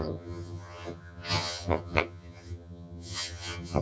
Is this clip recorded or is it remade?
remade